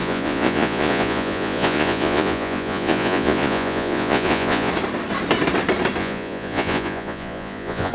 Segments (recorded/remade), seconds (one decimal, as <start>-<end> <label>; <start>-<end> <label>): 0.0-4.7 remade; 4.7-6.0 recorded; 6.0-7.9 remade